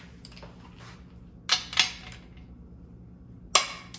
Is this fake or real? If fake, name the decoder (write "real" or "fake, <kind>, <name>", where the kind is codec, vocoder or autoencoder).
real